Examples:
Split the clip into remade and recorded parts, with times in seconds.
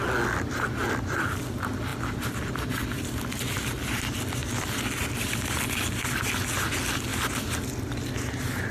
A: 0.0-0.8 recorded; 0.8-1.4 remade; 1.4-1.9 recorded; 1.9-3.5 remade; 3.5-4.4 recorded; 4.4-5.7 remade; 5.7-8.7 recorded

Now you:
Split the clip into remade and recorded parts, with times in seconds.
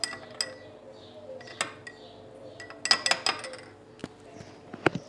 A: 0.0-4.0 recorded; 4.0-5.1 remade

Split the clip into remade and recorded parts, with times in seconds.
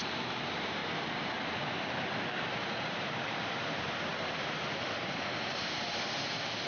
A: 0.0-0.8 remade; 0.8-2.8 recorded; 2.8-6.7 remade